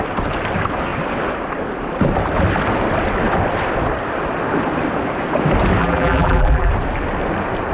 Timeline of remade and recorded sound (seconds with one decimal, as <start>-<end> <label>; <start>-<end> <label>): 0.0-5.8 recorded; 5.8-6.7 remade; 6.7-7.7 recorded